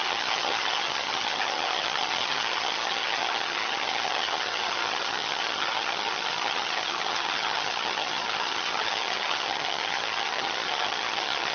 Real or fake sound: fake